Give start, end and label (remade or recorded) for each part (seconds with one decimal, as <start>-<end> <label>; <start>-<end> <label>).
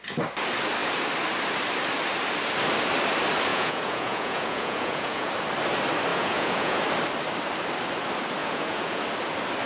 0.0-3.5 recorded; 3.5-5.3 remade; 5.3-6.1 recorded; 6.1-6.8 remade; 6.8-8.4 recorded; 8.4-9.0 remade; 9.0-9.7 recorded